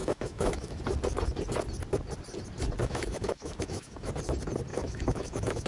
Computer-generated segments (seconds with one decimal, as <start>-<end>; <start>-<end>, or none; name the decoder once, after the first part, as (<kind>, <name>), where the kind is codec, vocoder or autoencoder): 0.0-0.8 (autoencoder, DAC-VAE); 2.8-4.1; 4.7-5.7